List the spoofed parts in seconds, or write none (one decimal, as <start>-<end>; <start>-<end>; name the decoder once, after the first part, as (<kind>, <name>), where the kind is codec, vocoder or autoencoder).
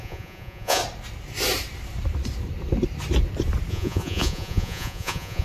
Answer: 0.0-0.8 (vocoder, Vocos); 3.7-5.4